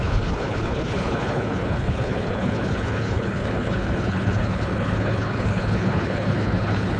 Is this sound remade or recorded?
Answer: remade